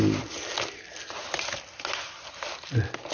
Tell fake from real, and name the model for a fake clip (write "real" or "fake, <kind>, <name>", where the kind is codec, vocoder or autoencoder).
real